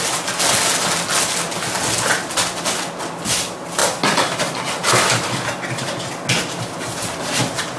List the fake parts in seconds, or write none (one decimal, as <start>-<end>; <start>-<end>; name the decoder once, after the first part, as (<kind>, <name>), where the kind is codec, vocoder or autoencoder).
none